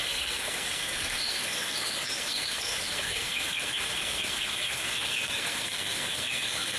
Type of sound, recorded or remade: remade